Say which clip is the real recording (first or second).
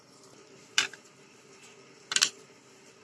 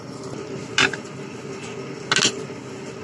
second